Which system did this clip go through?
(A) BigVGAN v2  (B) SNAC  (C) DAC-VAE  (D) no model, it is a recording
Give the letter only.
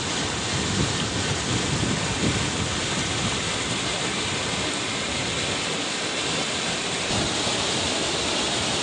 D